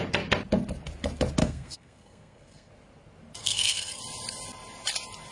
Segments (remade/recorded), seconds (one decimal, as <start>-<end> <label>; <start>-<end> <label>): 0.0-1.4 recorded; 1.4-2.7 remade; 2.7-3.4 recorded; 3.4-4.0 remade; 4.0-5.3 recorded